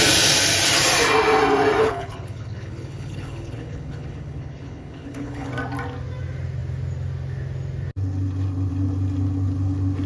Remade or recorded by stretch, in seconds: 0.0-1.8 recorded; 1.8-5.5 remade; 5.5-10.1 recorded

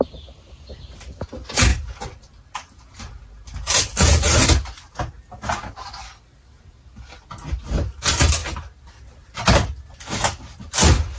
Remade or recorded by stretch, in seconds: 0.0-11.2 recorded

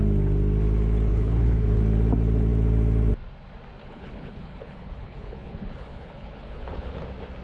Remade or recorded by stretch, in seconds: 0.0-1.1 recorded; 1.1-1.8 remade; 1.8-3.8 recorded; 3.8-6.9 remade; 6.9-7.4 recorded

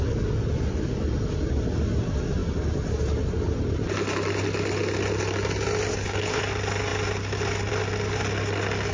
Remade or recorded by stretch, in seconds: 0.0-5.9 recorded; 5.9-6.4 remade; 6.4-8.9 recorded

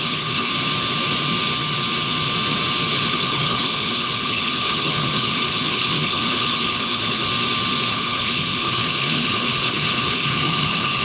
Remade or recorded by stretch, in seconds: 0.0-0.5 remade; 0.5-2.9 recorded; 2.9-7.2 remade; 7.2-7.9 recorded; 7.9-11.0 remade

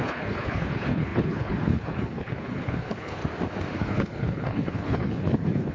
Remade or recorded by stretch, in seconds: 0.0-3.2 remade; 3.2-3.8 recorded; 3.8-5.7 remade

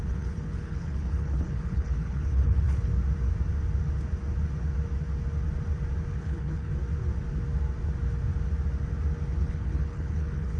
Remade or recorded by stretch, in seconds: 0.0-2.9 remade; 2.9-6.1 recorded; 6.1-6.7 remade; 6.7-9.4 recorded; 9.4-10.6 remade

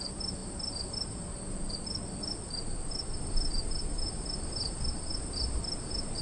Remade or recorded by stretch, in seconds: 0.0-6.2 recorded